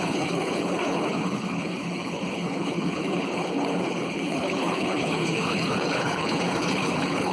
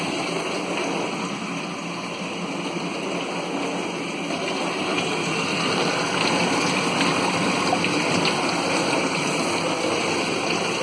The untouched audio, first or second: second